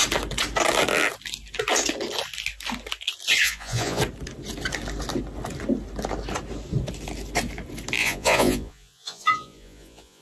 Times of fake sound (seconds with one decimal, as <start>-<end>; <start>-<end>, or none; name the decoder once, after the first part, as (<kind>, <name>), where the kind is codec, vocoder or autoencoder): 3.4-4.0 (vocoder, Vocos); 8.0-10.2